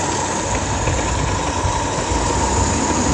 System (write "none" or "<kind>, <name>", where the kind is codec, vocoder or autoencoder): none